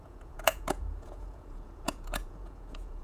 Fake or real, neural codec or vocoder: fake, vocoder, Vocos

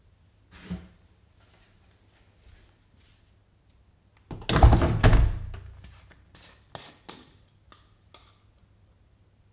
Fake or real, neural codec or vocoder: real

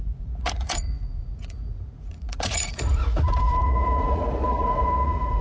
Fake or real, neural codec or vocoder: fake, vocoder, Vocos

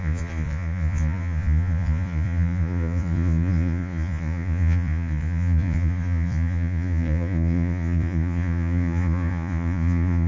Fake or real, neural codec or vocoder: fake, vocoder, Vocos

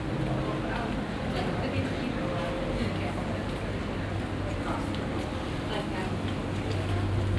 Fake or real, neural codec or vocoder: real